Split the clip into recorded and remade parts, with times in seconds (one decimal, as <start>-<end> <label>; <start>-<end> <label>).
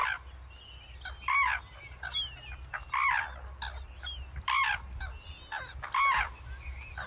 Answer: 0.0-7.1 recorded